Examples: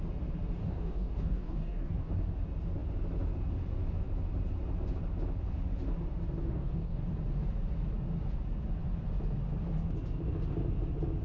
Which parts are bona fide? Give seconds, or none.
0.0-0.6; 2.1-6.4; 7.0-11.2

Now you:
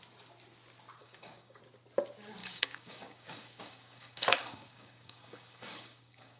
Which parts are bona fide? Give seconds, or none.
0.0-1.0; 1.6-2.4

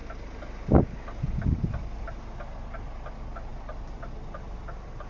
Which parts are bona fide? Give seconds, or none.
0.0-5.1

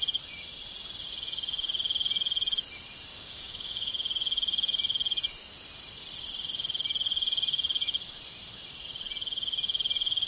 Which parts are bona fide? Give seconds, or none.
0.0-3.1; 3.9-10.3

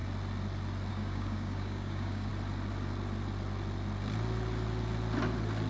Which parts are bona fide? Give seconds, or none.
0.0-0.9; 2.3-5.7

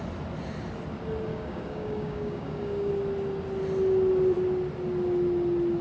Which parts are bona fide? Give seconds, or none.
0.0-1.3; 2.9-5.8

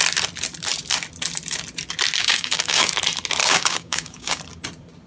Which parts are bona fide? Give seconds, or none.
0.0-2.2; 2.9-3.4; 4.4-5.1